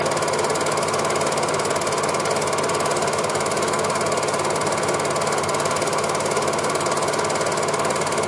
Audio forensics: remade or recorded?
recorded